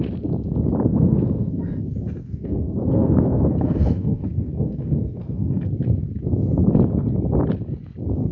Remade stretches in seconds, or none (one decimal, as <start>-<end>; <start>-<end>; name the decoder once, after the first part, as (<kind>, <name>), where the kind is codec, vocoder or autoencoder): 0.9-5.7 (codec, SNAC)